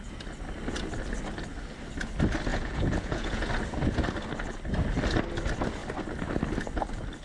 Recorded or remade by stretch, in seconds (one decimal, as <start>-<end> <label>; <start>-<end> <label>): 0.0-2.5 recorded; 2.5-3.5 remade; 3.5-7.2 recorded